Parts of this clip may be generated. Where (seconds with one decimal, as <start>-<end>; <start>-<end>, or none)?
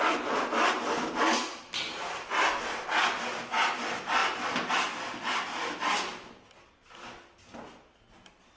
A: none